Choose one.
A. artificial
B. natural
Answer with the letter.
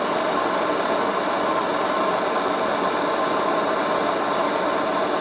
B